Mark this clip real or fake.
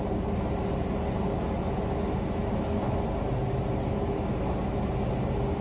real